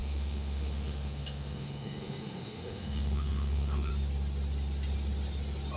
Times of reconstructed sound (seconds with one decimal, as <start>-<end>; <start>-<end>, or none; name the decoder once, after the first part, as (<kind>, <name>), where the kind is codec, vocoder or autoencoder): 0.0-3.9 (autoencoder, DAC-VAE)